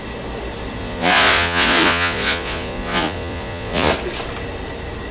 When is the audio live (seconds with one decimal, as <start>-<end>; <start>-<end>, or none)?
0.0-0.8; 3.9-5.1